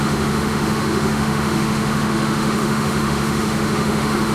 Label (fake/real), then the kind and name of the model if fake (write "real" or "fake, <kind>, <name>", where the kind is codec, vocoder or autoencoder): fake, autoencoder, DAC-VAE